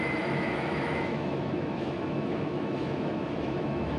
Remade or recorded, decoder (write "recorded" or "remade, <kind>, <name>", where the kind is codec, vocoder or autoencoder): remade, autoencoder, DAC-VAE